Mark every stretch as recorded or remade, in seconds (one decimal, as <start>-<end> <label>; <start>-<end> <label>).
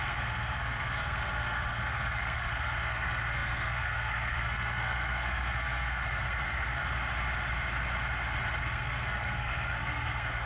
0.0-6.8 remade; 6.8-8.6 recorded; 8.6-10.5 remade